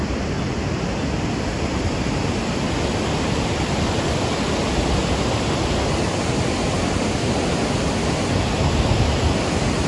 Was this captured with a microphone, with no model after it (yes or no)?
yes